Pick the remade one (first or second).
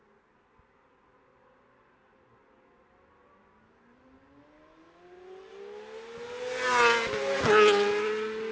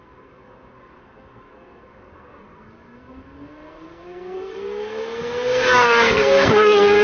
second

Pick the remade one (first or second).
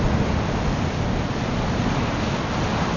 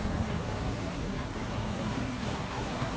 second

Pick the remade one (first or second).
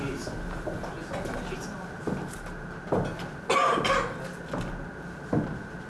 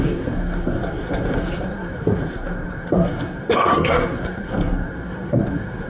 second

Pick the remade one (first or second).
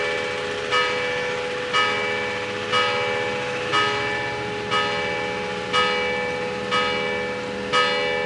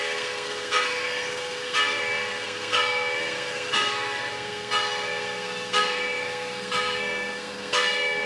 second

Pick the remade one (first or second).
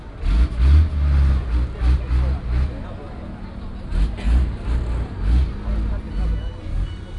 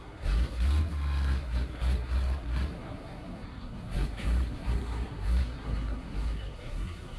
second